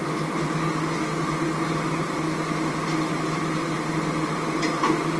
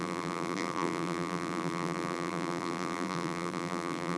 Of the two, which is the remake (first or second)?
second